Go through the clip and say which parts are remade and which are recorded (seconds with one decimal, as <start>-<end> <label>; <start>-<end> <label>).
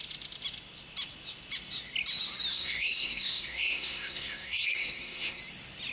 0.0-2.5 recorded; 2.5-5.4 remade; 5.4-5.9 recorded